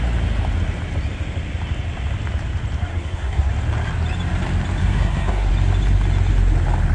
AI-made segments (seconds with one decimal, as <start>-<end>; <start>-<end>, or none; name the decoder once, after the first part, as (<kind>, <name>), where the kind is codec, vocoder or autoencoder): 2.9-3.5 (codec, SNAC); 4.8-5.5

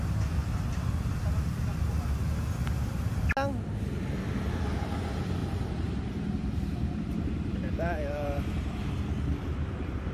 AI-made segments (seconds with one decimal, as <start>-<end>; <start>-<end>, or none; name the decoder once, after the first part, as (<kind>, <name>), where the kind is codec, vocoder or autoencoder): 5.4-8.9 (vocoder, BigVGAN v2)

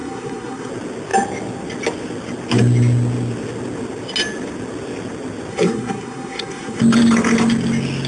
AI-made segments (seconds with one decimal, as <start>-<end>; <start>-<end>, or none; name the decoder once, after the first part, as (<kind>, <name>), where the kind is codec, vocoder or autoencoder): 0.0-0.7 (codec, SNAC); 5.5-6.8

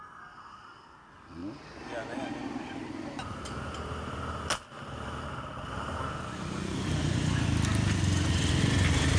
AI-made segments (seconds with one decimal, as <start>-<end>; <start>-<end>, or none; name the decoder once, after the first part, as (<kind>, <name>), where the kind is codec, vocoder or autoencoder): none